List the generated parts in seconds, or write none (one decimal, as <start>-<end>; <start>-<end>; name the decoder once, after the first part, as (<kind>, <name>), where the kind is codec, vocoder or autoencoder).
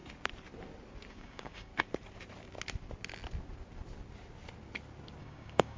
1.1-1.7 (codec, DAC); 5.2-5.8